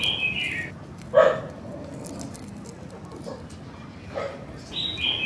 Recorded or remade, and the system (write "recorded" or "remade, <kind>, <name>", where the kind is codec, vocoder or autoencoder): recorded